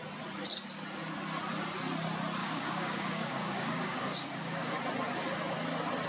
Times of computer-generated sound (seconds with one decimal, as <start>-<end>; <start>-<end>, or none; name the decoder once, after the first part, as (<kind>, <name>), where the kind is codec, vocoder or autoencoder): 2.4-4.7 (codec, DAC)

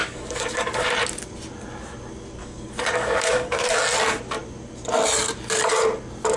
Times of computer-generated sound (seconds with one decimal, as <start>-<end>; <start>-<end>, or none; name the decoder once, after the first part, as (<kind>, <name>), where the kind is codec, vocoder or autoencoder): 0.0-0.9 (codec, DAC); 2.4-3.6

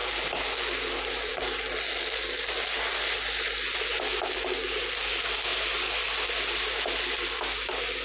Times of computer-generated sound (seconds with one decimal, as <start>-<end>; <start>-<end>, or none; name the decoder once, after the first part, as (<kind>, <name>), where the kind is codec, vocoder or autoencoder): none